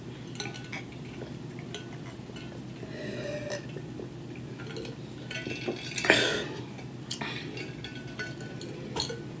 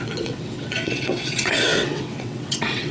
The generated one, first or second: second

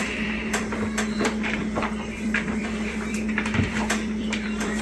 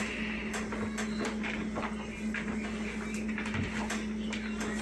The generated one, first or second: first